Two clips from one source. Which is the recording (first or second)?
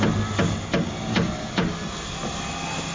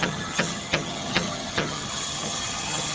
first